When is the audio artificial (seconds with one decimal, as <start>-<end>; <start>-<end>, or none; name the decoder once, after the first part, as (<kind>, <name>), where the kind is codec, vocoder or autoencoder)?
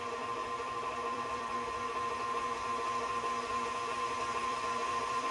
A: 0.4-1.5 (vocoder, BigVGAN v2); 4.4-5.3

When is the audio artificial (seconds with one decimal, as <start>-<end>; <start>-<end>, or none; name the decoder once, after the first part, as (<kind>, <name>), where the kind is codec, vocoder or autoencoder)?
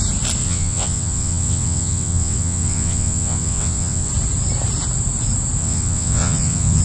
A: 0.4-4.1 (vocoder, WaveNeXt); 5.6-6.8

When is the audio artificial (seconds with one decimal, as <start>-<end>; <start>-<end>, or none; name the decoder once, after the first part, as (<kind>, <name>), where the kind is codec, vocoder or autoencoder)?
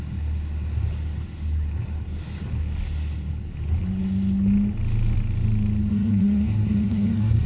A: 5.9-7.5 (codec, SNAC)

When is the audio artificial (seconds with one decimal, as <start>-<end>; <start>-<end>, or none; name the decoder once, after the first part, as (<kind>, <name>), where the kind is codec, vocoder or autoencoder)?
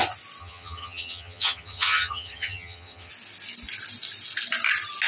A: 0.4-3.1 (vocoder, HiFi-GAN)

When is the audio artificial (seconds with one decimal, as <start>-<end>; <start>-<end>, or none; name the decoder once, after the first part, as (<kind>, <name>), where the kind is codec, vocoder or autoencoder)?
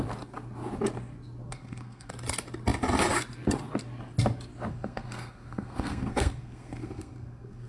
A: 1.5-2.1 (codec, SNAC); 4.7-7.7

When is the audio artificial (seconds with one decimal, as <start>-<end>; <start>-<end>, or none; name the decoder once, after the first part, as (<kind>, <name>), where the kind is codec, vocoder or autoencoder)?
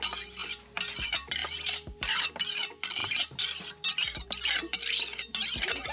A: none